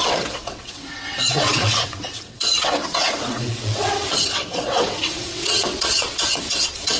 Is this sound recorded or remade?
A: remade